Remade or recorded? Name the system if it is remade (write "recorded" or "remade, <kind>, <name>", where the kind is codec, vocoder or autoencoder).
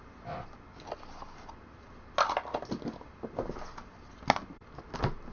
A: recorded